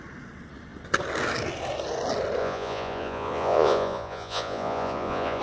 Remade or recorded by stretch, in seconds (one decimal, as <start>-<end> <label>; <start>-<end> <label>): 0.0-2.4 recorded; 2.4-5.4 remade